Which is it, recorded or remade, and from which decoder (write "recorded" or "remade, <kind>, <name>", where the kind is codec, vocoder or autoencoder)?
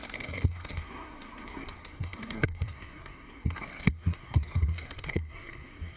remade, codec, SNAC